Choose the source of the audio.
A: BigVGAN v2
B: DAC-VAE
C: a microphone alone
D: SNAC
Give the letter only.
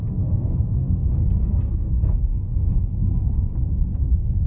D